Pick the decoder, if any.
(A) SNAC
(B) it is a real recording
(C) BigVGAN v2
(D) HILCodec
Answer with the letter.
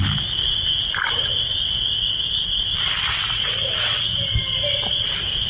B